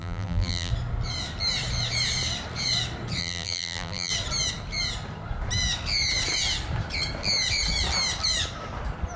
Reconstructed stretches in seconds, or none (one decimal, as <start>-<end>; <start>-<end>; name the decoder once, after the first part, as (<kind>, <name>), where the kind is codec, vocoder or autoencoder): 0.0-0.7 (vocoder, BigVGAN v2); 3.2-4.1

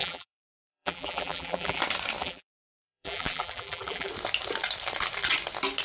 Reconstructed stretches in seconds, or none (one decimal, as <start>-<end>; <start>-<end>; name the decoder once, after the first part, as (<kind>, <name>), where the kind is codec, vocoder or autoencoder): 0.0-1.8 (vocoder, BigVGAN v2); 2.2-4.1

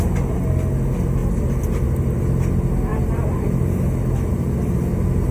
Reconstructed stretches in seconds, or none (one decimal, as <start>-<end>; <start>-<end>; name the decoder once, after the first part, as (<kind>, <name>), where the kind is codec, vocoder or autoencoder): 2.9-4.1 (vocoder, BigVGAN v2)

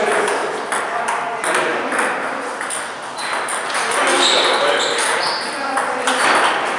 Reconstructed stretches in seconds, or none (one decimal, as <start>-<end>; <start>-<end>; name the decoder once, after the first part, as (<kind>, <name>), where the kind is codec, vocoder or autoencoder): 1.7-5.8 (vocoder, BigVGAN v2)

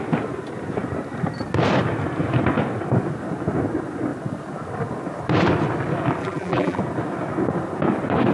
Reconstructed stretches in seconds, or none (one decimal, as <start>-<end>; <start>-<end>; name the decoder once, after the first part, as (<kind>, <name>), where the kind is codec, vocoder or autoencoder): 6.2-6.8 (vocoder, BigVGAN v2)